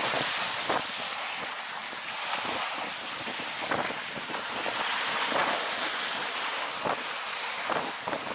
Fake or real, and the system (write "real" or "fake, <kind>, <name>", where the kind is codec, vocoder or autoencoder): real